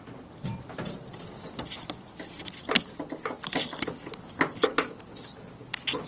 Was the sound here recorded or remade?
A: recorded